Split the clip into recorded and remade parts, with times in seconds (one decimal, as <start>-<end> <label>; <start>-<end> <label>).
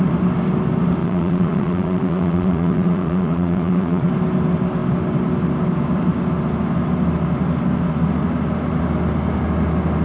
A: 0.0-1.0 recorded; 1.0-4.1 remade; 4.1-10.0 recorded